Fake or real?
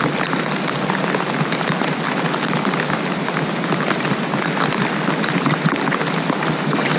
real